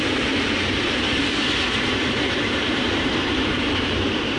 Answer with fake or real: fake